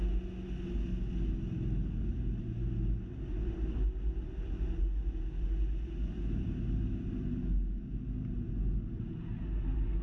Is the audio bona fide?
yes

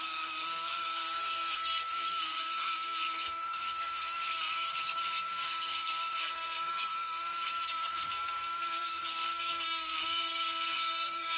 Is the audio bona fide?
no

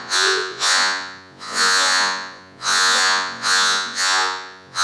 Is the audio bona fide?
no